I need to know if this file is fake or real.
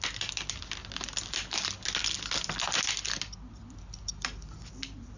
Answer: real